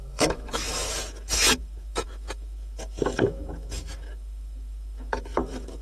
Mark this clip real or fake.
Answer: fake